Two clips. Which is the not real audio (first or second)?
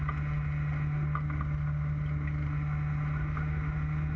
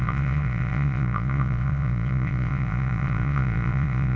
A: second